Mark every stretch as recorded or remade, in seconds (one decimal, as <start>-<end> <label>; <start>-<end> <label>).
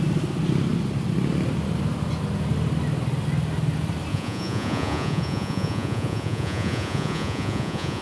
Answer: 0.0-4.1 recorded; 4.1-8.0 remade